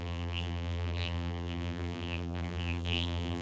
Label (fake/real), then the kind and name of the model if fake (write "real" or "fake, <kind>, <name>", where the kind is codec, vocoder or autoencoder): fake, vocoder, BigVGAN v2